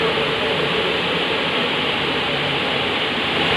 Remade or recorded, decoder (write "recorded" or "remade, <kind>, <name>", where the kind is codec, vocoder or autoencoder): recorded